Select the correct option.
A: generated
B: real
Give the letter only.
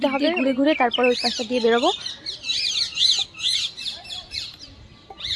B